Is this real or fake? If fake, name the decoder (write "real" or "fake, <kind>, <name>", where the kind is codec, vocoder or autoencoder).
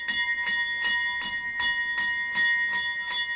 real